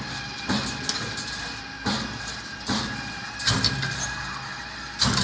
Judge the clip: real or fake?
real